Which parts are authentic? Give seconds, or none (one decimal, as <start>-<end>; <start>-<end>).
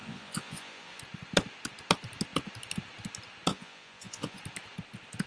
1.0-3.5; 4.4-5.3